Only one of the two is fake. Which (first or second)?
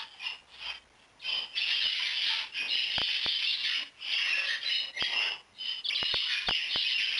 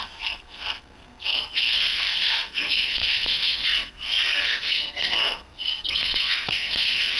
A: second